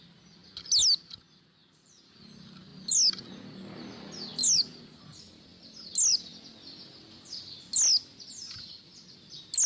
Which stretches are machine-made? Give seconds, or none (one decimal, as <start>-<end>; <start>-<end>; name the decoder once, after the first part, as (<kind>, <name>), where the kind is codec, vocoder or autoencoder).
none